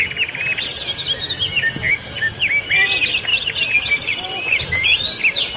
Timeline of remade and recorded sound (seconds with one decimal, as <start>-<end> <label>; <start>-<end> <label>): 0.0-3.3 recorded; 3.3-5.0 remade; 5.0-5.6 recorded